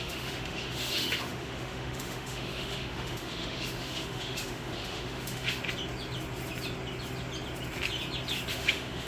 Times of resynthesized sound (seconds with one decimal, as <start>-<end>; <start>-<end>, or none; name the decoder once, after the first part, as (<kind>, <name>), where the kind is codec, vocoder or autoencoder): 0.0-5.6 (autoencoder, DAC-VAE); 8.5-9.1